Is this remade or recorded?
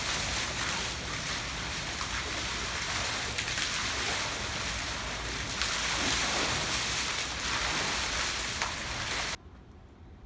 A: recorded